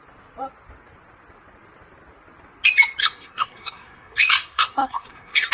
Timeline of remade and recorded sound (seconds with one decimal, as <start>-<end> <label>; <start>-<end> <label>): 0.0-3.0 recorded; 3.0-5.5 remade